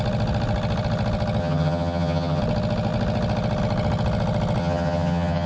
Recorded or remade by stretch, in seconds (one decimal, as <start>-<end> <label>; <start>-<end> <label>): 0.0-1.4 recorded; 1.4-2.4 remade; 2.4-4.6 recorded; 4.6-5.5 remade